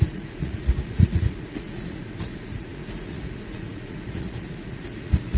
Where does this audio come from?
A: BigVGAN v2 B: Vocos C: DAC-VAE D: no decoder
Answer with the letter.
B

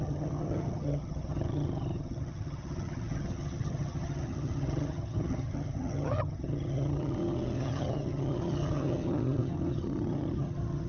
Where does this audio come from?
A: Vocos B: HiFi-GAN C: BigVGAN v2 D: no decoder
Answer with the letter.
B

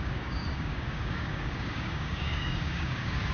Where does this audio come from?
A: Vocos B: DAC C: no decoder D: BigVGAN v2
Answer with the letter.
B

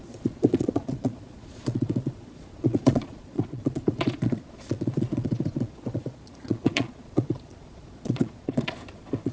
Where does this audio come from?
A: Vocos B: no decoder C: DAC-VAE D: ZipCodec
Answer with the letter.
A